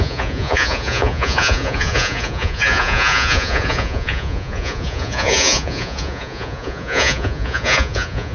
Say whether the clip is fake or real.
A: fake